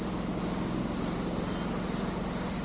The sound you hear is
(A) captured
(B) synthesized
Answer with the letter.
A